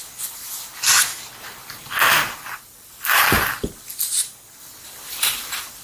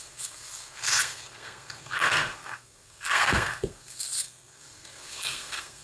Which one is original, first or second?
first